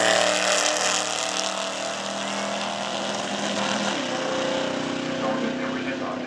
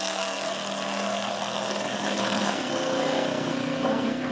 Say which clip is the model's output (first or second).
second